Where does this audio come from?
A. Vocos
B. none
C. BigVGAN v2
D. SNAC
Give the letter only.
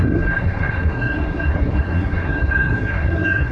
D